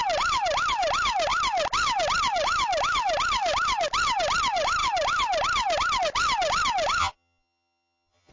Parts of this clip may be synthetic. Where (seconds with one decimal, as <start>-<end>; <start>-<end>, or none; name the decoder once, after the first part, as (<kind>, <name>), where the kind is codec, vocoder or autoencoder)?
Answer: 7.0-8.3 (vocoder, HiFi-GAN)